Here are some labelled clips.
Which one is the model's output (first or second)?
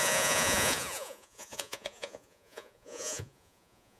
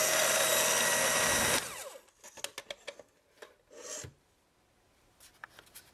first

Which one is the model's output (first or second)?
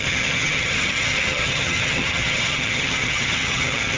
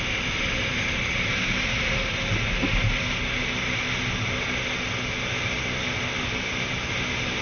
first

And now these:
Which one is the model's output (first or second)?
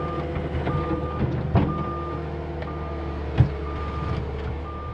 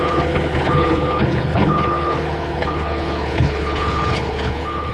second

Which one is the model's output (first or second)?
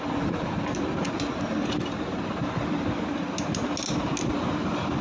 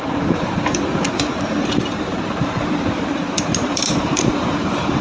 second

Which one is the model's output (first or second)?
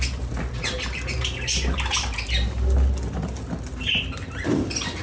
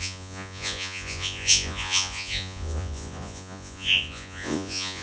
second